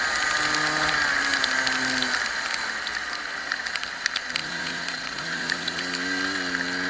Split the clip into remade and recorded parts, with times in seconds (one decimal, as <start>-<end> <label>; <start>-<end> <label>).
0.0-4.4 recorded; 4.4-5.8 remade; 5.8-6.9 recorded